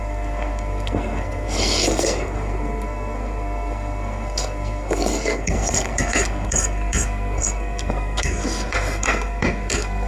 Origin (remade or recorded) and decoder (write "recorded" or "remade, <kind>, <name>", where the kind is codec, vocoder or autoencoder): remade, codec, SNAC